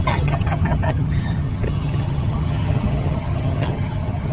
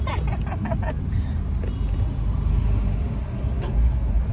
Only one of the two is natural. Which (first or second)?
second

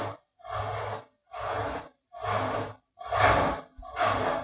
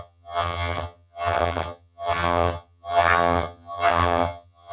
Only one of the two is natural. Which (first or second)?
first